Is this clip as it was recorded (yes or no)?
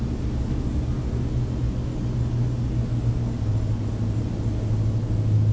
yes